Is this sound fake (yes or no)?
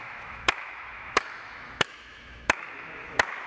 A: yes